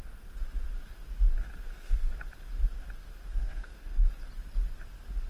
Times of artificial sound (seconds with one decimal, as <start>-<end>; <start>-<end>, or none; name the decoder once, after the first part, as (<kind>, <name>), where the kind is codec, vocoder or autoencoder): 1.5-2.1 (codec, SNAC); 3.1-4.1